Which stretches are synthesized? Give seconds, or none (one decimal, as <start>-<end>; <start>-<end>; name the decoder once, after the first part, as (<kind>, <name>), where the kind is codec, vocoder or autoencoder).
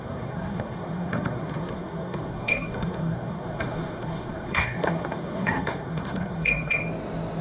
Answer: 0.0-6.8 (codec, SNAC)